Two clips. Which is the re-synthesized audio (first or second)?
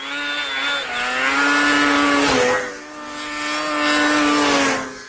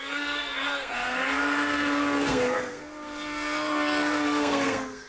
second